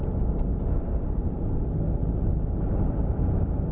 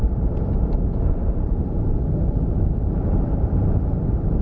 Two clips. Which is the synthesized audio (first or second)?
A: second